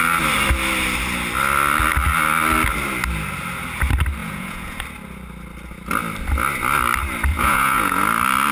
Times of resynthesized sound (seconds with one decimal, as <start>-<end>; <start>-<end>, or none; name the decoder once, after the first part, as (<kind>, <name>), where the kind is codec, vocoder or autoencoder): 4.2-4.8 (vocoder, Vocos); 7.3-8.0

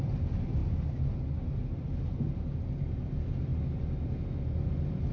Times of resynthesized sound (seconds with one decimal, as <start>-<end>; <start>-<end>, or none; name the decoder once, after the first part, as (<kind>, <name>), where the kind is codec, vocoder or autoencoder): none

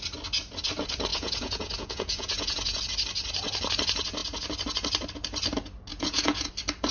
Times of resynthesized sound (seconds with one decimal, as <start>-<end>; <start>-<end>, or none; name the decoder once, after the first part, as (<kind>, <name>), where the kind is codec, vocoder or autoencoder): 1.1-2.8 (vocoder, Vocos); 5.9-6.5

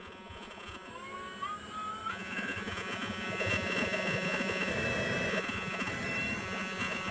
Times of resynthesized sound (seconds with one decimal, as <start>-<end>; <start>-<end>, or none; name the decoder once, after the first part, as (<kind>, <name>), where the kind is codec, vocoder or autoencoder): 0.0-0.9 (vocoder, Vocos); 2.1-4.7; 5.3-5.9; 6.4-7.1